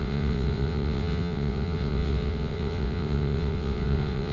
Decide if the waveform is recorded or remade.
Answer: remade